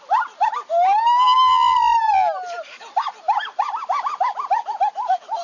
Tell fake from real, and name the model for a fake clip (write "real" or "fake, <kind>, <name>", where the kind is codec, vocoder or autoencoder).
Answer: real